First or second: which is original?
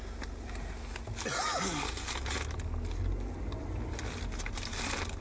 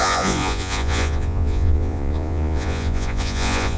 first